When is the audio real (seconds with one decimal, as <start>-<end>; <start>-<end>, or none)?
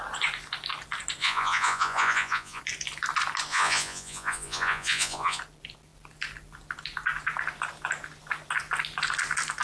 0.0-1.2; 2.6-3.5; 5.4-9.6